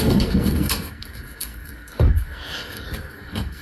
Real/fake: fake